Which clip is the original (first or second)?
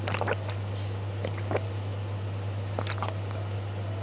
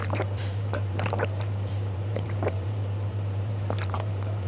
first